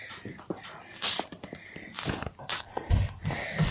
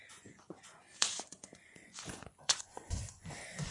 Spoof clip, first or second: second